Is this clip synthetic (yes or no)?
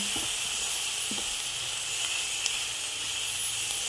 no